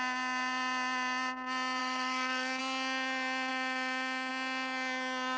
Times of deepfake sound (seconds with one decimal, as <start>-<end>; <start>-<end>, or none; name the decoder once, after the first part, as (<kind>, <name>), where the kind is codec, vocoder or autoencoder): 1.8-2.6 (autoencoder, DAC-VAE); 3.5-4.3